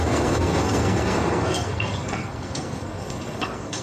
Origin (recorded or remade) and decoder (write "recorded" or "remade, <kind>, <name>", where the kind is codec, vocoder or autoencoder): remade, codec, SNAC